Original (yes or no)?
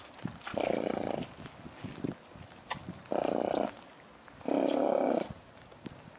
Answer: yes